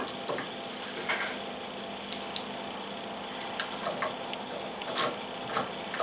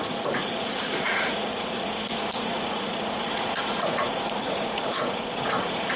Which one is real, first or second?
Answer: first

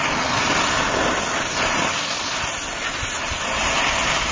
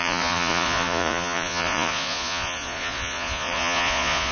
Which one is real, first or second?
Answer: first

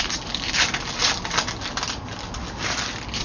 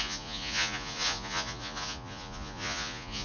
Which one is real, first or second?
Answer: first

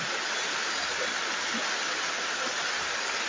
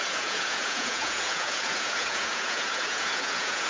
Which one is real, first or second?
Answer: first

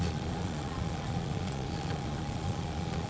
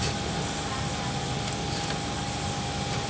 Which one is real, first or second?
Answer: second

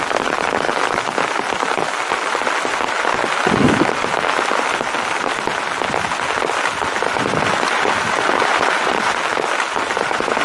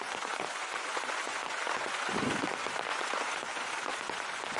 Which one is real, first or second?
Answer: first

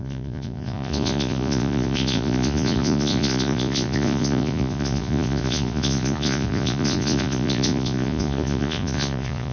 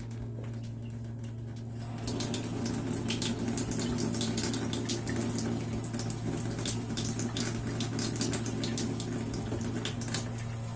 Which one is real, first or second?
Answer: second